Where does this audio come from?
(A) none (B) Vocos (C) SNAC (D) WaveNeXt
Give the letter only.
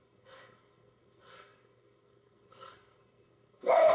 C